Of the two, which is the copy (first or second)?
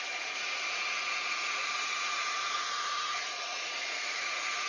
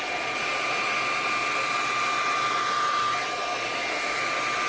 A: first